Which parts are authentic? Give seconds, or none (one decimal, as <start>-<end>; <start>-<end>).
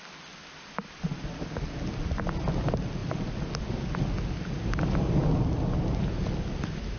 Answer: 0.0-7.0